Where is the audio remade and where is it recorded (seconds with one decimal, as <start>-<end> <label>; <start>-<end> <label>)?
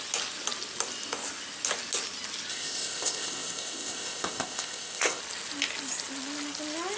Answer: 0.0-2.5 recorded; 2.5-5.2 remade; 5.2-7.0 recorded